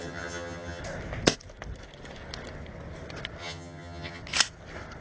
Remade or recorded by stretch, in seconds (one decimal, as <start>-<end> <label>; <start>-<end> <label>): 0.0-0.8 remade; 0.8-3.4 recorded; 3.4-4.2 remade; 4.2-5.0 recorded